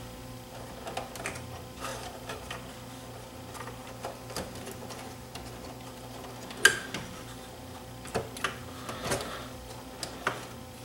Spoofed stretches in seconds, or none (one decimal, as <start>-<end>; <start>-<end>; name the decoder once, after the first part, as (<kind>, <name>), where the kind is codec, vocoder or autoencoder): 1.9-2.7 (vocoder, BigVGAN v2)